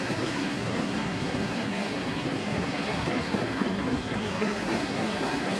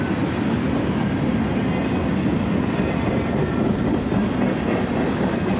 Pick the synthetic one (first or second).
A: first